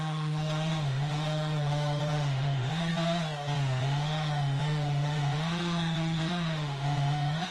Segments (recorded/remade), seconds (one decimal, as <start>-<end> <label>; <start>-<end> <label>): 0.0-2.9 remade; 2.9-3.8 recorded; 3.8-7.5 remade